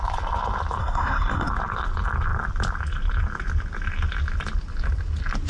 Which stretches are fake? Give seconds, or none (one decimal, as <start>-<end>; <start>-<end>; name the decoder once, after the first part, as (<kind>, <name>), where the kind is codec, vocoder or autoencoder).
0.8-1.5 (codec, SNAC)